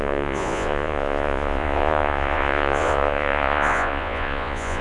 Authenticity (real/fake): fake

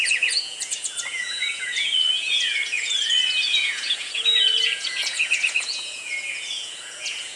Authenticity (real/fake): fake